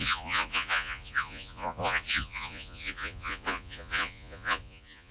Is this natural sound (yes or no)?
no